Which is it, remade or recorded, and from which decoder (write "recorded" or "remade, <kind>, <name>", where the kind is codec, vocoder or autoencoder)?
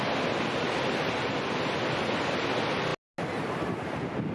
recorded